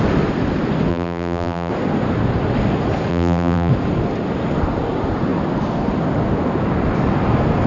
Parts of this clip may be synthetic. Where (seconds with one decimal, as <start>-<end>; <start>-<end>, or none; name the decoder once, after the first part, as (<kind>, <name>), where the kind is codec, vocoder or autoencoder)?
0.9-1.7 (vocoder, BigVGAN v2); 3.1-3.7